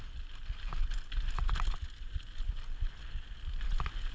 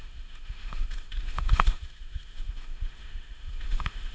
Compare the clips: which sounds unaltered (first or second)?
first